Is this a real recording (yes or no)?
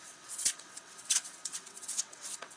no